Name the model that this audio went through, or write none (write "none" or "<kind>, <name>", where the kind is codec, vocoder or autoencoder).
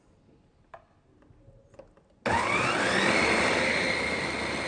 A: none